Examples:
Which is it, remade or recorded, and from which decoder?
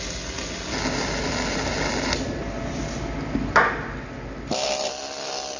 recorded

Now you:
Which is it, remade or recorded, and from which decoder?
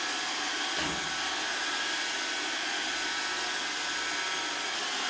recorded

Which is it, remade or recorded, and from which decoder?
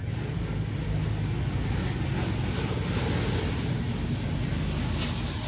recorded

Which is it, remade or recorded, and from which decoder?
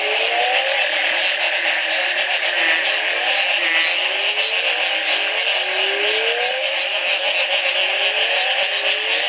recorded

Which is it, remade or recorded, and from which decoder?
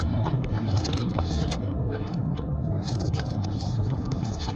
remade, codec, SNAC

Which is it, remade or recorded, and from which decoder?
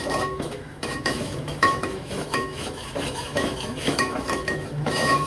remade, autoencoder, DAC-VAE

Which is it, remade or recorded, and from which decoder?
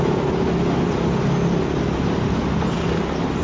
recorded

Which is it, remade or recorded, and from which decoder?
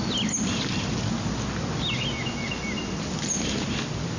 recorded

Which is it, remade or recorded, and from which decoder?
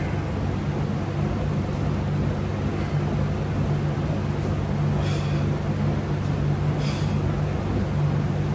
recorded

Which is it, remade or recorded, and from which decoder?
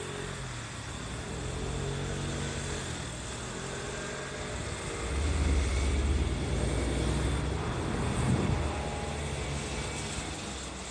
recorded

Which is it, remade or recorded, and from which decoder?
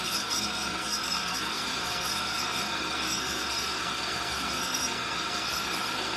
remade, codec, SNAC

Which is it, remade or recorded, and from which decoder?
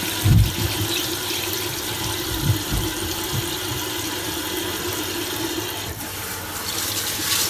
remade, vocoder, BigVGAN v2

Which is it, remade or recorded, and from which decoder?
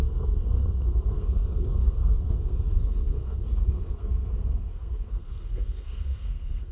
remade, codec, SNAC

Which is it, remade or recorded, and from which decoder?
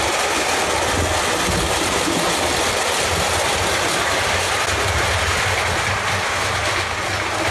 recorded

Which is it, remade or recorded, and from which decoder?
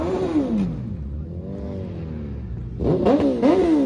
recorded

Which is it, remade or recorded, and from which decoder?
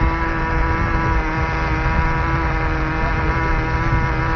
recorded